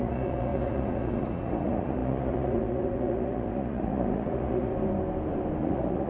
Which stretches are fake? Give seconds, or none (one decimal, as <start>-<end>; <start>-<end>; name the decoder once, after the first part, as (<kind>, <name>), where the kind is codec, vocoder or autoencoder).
0.0-4.7 (vocoder, Vocos); 5.6-6.1

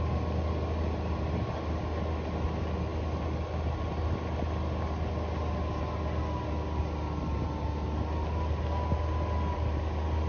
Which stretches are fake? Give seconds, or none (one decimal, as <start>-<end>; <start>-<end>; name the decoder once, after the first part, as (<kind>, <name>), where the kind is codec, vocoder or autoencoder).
none

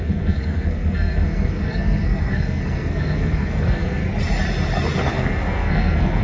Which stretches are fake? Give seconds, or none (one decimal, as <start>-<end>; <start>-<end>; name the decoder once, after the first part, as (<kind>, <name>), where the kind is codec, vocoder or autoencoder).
0.0-4.0 (codec, SNAC); 5.1-6.2

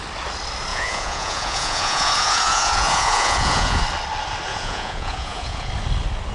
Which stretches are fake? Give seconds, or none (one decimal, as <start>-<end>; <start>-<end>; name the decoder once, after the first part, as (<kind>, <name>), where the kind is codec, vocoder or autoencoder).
0.7-3.8 (vocoder, Vocos); 4.5-5.7

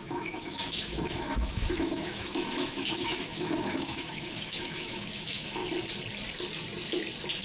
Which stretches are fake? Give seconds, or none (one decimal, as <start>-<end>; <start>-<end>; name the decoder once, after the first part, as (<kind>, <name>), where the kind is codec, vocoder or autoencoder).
0.0-5.6 (autoencoder, DAC-VAE)

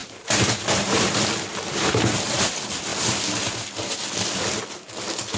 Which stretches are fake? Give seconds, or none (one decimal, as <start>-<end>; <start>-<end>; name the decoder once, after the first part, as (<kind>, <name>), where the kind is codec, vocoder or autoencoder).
0.0-1.0 (vocoder, BigVGAN v2); 1.5-2.5

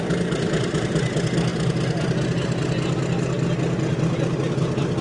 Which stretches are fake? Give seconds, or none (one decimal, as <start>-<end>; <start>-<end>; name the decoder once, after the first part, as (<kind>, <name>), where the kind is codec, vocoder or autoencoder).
none